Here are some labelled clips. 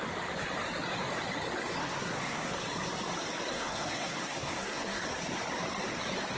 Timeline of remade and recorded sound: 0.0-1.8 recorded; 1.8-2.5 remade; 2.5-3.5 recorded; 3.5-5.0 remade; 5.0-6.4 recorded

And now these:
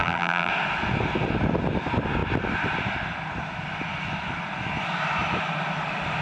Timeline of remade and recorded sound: 0.0-0.5 remade; 0.5-6.2 recorded

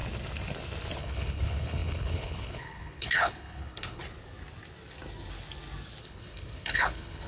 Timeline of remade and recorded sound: 0.0-1.0 recorded; 1.0-4.0 remade; 4.0-6.0 recorded; 6.0-7.3 remade

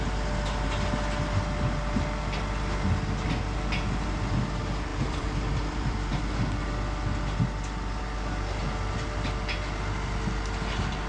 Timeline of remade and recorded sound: 0.0-4.9 recorded; 4.9-6.1 remade; 6.1-11.1 recorded